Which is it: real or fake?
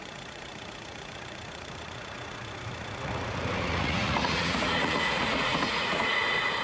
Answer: fake